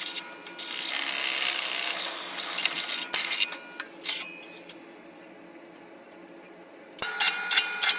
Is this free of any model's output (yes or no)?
yes